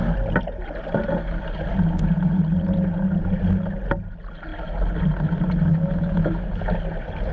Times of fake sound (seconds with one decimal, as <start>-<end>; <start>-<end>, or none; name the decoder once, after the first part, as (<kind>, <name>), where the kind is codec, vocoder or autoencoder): 5.7-6.6 (autoencoder, DAC-VAE)